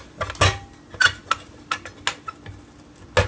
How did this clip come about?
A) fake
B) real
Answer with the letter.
B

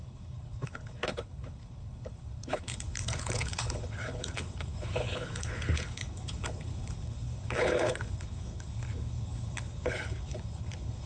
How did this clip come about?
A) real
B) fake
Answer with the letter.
B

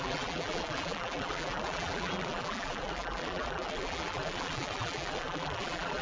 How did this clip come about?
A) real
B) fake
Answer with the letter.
B